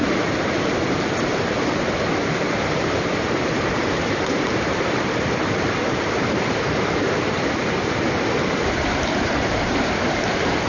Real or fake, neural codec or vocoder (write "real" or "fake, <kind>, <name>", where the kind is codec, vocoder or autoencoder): fake, vocoder, BigVGAN v2